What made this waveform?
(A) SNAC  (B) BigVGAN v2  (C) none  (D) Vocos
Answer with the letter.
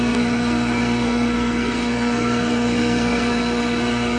A